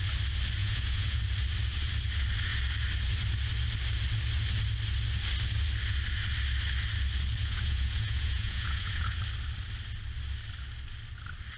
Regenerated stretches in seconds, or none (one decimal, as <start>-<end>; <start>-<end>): 0.6-1.2; 7.4-9.2